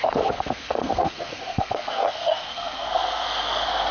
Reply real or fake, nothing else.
fake